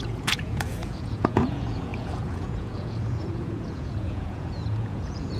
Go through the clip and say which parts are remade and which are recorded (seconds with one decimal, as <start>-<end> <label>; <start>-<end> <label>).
0.0-5.4 remade